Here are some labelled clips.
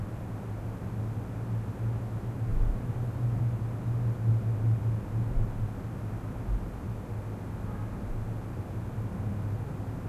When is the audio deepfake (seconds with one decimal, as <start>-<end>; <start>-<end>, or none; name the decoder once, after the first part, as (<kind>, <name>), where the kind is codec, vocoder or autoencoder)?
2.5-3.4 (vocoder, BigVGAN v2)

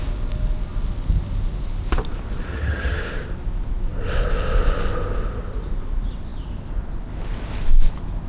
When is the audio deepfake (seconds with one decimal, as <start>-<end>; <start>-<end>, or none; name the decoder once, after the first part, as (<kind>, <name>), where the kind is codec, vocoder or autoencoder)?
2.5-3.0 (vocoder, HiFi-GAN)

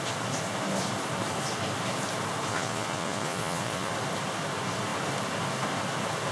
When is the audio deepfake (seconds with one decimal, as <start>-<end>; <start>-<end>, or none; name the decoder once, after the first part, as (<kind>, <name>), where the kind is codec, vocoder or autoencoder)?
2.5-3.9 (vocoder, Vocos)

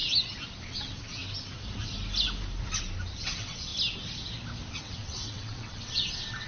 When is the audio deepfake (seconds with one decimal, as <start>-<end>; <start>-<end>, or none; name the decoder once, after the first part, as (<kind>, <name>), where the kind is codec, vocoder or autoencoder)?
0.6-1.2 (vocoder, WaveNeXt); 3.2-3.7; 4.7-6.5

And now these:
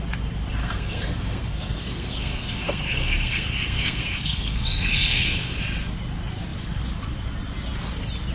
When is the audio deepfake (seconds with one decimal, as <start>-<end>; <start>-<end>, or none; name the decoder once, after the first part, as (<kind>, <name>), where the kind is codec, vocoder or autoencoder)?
0.6-5.6 (codec, SNAC)